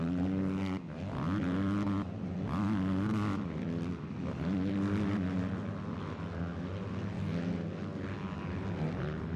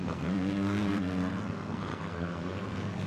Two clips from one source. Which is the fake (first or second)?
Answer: second